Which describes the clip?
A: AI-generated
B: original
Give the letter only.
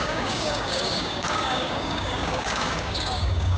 A